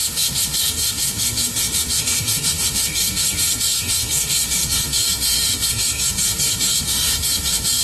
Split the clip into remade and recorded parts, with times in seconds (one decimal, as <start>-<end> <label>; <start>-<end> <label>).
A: 0.0-7.8 remade